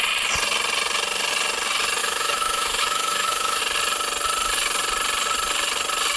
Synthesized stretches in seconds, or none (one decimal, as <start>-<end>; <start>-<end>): 2.0-3.6